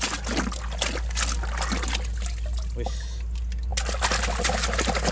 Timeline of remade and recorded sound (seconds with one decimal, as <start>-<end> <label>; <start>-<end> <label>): 0.0-5.1 recorded